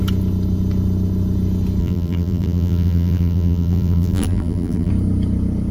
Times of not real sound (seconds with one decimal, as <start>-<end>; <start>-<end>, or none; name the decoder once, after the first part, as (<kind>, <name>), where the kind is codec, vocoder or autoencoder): 1.8-4.9 (vocoder, BigVGAN v2)